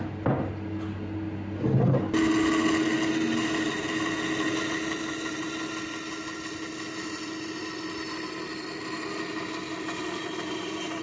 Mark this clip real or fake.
real